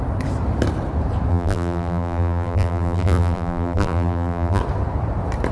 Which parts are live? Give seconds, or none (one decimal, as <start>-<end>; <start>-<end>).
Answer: 0.0-1.3; 4.6-5.5